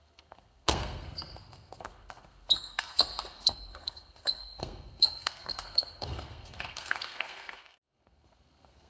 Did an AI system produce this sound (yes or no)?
yes